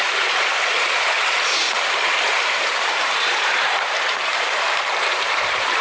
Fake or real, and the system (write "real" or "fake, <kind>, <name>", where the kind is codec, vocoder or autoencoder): fake, vocoder, BigVGAN v2